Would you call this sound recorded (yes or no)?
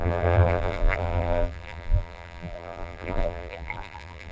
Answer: no